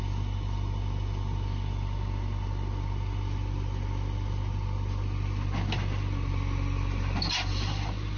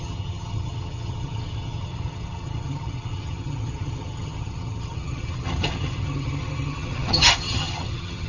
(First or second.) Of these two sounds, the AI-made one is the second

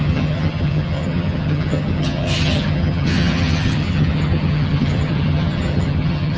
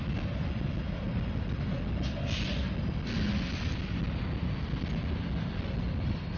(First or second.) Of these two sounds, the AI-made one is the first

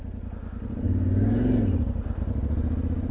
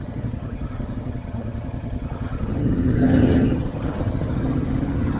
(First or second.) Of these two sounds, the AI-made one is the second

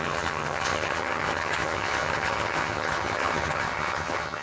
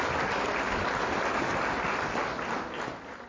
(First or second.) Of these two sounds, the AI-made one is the first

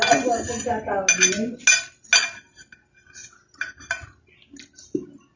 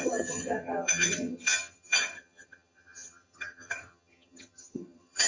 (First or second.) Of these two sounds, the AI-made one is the second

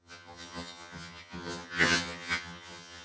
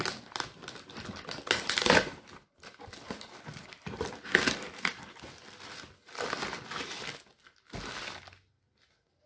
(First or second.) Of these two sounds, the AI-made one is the first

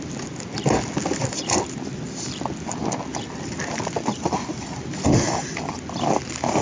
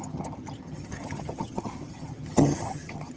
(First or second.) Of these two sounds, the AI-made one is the second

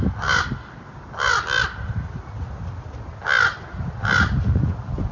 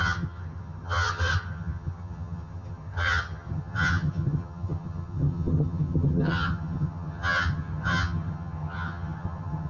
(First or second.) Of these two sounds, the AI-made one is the second